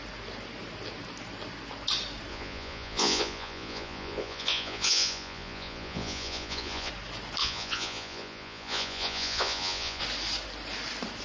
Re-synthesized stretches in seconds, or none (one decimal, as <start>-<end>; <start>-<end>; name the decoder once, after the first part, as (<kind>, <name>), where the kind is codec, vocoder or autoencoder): 2.3-6.9 (vocoder, Vocos); 7.4-10.0

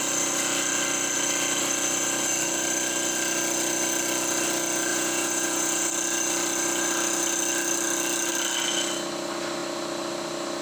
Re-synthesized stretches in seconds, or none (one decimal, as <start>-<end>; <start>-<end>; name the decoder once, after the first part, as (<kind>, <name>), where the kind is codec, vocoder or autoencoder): 4.9-5.9 (vocoder, Vocos)